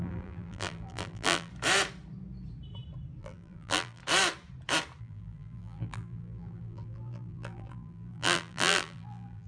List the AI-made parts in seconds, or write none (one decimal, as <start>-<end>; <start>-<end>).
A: 0.0-1.5; 3.2-4.0; 5.0-9.5